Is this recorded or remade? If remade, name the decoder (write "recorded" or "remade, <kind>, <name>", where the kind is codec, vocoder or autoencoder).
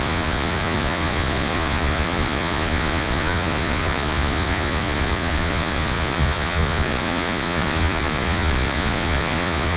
remade, vocoder, Vocos